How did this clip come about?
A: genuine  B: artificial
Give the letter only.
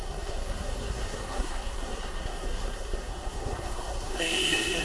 B